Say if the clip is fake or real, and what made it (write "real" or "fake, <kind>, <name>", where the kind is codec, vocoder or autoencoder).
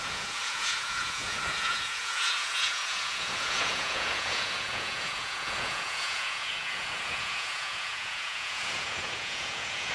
fake, vocoder, Vocos